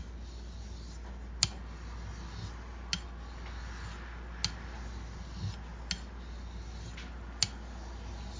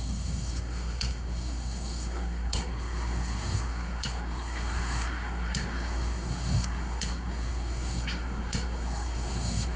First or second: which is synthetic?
second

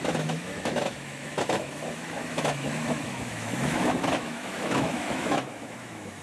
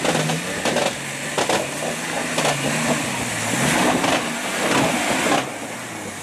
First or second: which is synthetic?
first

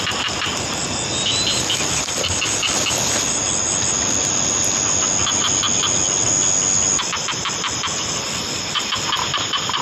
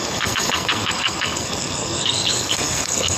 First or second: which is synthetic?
second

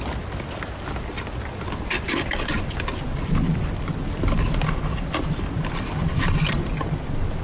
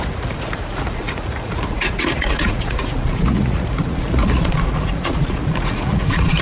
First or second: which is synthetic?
second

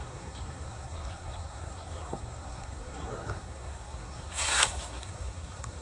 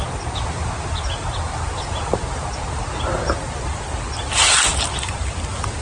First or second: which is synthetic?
first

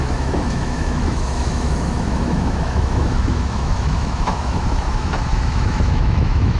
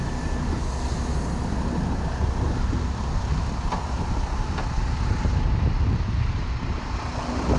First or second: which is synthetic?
first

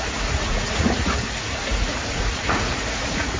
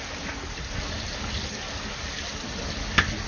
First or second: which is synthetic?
first